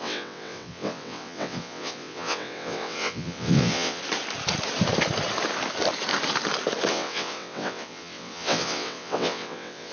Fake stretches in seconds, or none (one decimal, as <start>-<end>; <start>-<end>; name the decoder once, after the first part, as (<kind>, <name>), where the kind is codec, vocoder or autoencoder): 0.0-4.0 (vocoder, WaveNeXt); 6.9-9.9